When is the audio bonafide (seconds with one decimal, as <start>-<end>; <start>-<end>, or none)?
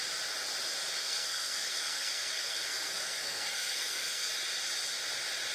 0.0-1.0; 4.3-5.5